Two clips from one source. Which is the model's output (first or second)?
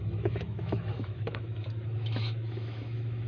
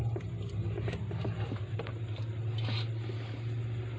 first